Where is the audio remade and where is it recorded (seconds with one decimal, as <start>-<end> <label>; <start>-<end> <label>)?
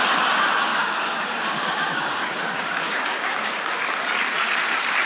0.0-0.7 recorded; 0.7-3.8 remade; 3.8-5.1 recorded